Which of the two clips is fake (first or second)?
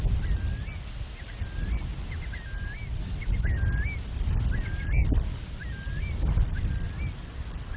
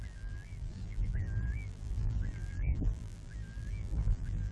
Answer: second